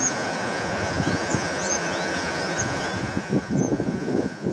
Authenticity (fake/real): fake